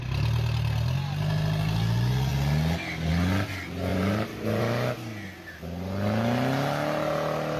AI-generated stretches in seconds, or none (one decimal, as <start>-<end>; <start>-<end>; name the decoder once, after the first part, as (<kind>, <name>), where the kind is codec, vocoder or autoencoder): 3.9-4.6 (vocoder, BigVGAN v2)